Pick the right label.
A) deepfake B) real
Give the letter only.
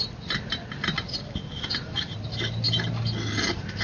B